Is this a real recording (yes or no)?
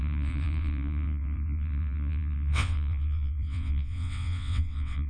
no